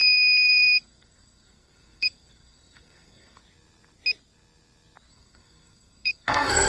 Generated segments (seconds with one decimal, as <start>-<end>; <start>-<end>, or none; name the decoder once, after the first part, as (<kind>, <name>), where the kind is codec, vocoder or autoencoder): 0.0-3.4 (codec, SNAC); 5.1-6.7